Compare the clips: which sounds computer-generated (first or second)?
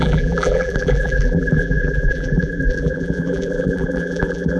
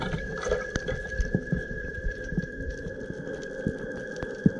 first